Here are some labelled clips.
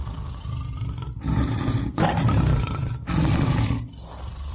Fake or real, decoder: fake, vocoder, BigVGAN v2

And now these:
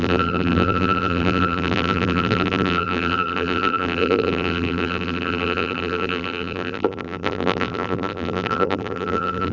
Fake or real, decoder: fake, vocoder, BigVGAN v2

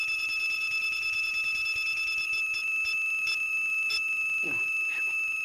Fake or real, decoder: fake, vocoder, BigVGAN v2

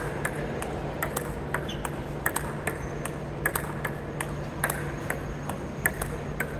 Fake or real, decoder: real